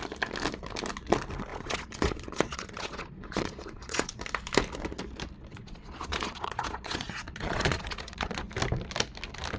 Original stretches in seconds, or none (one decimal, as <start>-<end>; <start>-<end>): 0.0-1.5; 4.2-5.5; 8.4-9.6